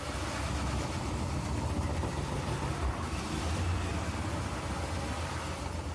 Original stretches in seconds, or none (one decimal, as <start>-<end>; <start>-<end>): 0.0-5.9